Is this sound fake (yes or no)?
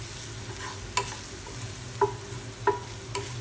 no